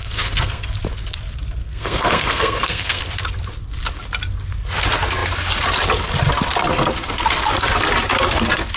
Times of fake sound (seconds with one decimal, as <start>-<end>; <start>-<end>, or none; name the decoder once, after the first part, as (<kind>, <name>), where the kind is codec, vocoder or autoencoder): 0.0-0.7 (codec, SNAC); 1.6-3.0